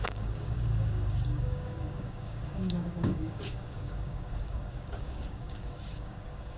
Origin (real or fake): fake